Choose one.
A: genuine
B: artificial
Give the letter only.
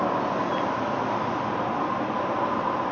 A